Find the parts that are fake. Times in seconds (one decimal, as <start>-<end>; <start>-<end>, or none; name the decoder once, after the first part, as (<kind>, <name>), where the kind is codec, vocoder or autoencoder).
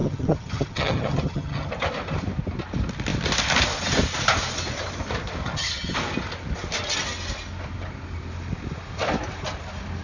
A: 0.0-1.7 (vocoder, HiFi-GAN); 5.4-5.9